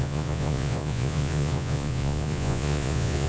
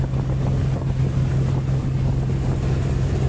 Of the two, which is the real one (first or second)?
second